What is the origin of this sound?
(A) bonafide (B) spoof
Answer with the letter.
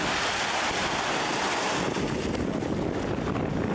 A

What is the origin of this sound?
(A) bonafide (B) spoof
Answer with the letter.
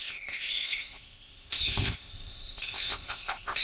B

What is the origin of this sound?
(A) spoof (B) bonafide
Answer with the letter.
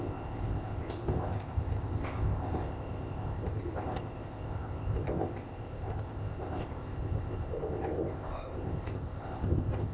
A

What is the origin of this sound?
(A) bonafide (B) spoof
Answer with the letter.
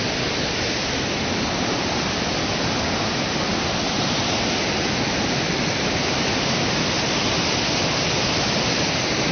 A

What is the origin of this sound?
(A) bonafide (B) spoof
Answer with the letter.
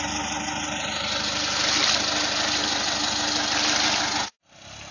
A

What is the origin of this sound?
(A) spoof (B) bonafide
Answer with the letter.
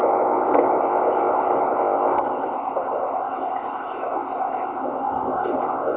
A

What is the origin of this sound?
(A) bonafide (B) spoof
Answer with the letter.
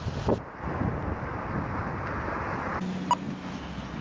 A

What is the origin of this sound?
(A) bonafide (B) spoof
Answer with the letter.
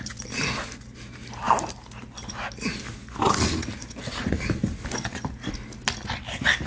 A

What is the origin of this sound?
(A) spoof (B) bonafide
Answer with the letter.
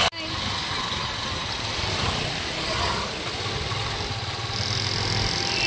B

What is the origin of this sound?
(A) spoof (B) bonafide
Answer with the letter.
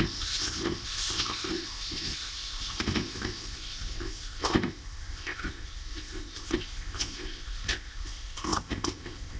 A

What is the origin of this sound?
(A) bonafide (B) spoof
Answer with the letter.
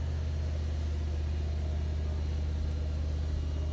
A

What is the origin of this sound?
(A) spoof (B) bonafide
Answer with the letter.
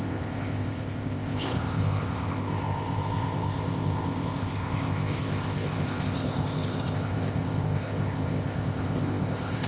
A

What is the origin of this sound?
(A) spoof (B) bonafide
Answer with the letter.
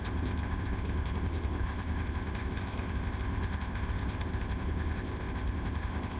A